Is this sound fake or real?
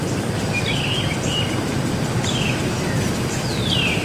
real